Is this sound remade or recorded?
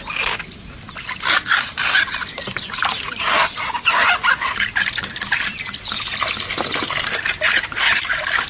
recorded